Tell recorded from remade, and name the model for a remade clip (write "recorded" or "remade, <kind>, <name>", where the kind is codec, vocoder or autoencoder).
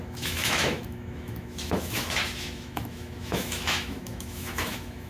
remade, autoencoder, DAC-VAE